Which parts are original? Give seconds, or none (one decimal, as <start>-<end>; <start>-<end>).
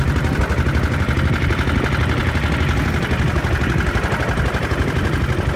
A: 0.0-5.6